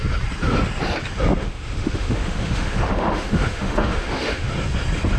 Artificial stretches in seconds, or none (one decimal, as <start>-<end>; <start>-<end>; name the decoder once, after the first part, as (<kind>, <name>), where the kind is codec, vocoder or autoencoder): 1.4-4.5 (autoencoder, DAC-VAE)

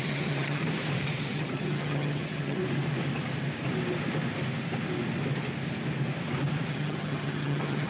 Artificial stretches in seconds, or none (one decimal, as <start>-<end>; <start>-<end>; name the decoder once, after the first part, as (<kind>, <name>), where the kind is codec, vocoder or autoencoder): 0.0-0.6 (vocoder, HiFi-GAN); 1.2-2.6; 6.7-7.9

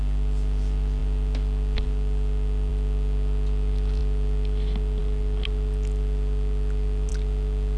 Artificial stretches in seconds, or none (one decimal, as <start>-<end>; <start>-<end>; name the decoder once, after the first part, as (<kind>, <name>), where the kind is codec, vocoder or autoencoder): none

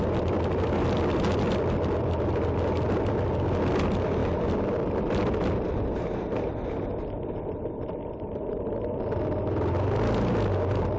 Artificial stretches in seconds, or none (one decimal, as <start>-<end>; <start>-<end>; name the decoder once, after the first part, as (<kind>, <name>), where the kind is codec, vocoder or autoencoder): none